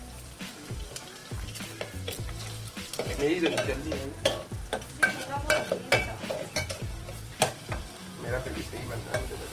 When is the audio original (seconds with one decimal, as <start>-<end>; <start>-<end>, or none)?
1.2-4.9